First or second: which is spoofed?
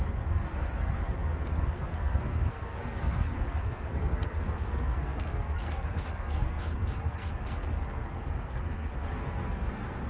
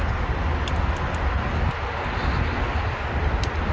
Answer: first